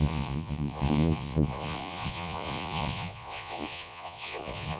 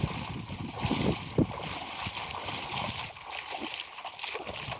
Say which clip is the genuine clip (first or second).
second